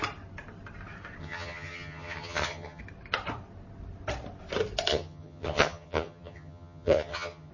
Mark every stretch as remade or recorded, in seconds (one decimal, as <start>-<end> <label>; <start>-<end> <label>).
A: 0.0-1.2 recorded; 1.2-2.8 remade; 2.8-4.9 recorded; 4.9-7.5 remade